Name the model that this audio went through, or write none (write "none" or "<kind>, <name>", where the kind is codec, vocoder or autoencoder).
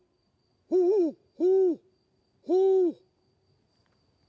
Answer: none